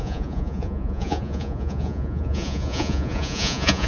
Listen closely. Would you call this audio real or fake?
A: fake